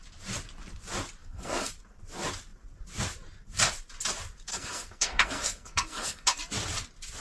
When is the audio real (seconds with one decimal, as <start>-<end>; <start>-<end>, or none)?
0.0-1.2; 1.7-4.5; 6.4-7.2

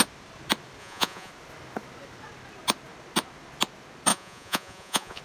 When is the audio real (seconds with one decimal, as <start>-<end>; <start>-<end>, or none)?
0.0-0.8; 1.3-4.1

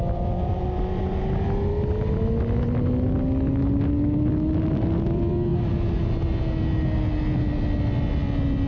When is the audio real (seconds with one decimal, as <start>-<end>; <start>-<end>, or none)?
0.0-8.7